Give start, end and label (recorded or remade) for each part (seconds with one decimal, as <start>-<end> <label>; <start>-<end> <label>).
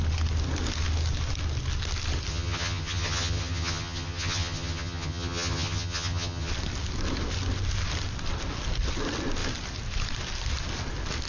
0.0-2.3 recorded; 2.3-6.5 remade; 6.5-11.3 recorded